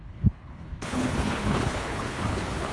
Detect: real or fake fake